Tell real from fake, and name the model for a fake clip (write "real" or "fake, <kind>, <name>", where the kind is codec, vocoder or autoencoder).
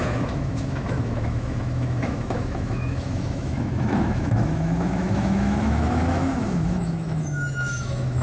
fake, autoencoder, DAC-VAE